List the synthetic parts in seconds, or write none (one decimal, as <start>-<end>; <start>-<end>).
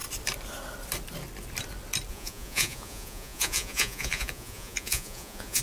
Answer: 2.1-5.6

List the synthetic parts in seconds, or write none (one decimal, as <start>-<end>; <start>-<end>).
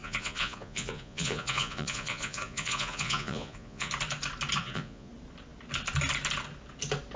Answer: 0.0-3.9; 4.6-5.1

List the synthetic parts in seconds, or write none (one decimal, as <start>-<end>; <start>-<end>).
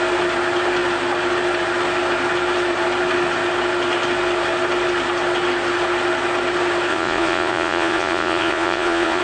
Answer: 6.9-9.2